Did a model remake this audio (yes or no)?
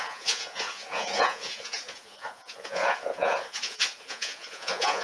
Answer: yes